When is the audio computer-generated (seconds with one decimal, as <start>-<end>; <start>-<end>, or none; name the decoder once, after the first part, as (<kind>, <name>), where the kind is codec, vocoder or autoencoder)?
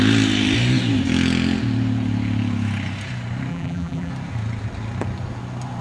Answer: 3.5-4.1 (vocoder, BigVGAN v2)